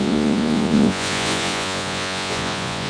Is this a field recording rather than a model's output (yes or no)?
no